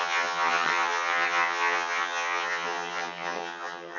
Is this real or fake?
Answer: fake